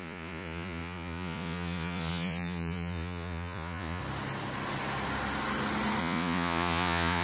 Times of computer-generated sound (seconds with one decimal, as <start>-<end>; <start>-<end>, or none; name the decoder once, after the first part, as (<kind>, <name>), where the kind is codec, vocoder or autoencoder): 0.0-4.0 (vocoder, Vocos); 6.0-7.2